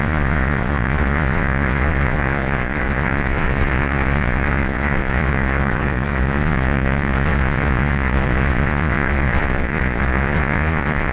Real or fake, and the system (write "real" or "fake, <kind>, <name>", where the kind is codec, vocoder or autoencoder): fake, vocoder, Vocos